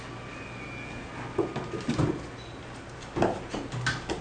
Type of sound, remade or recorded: recorded